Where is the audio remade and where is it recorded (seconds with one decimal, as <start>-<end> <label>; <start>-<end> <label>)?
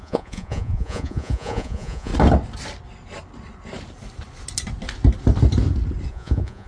0.0-2.1 remade; 2.1-6.1 recorded; 6.1-6.7 remade